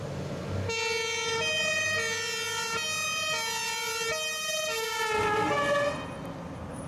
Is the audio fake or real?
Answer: real